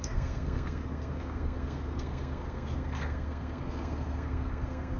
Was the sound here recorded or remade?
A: remade